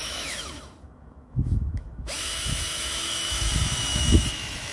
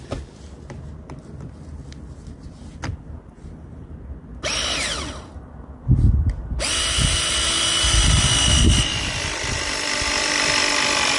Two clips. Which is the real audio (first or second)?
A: second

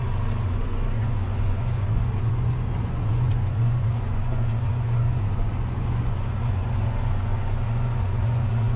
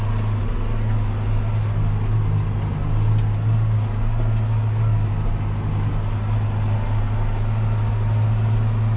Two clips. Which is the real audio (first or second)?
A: second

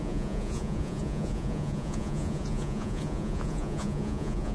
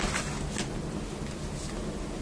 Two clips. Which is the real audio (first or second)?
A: second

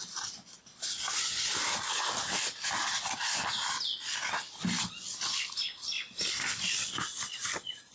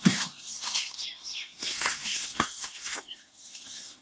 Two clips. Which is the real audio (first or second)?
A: first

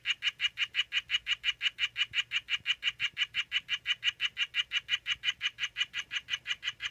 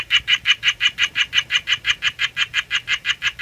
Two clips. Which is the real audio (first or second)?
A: first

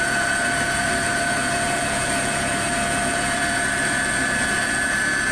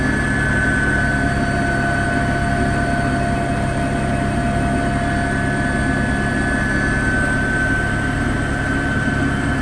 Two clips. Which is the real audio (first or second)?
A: second